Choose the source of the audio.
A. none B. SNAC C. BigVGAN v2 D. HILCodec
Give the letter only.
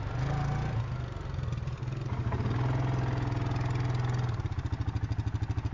A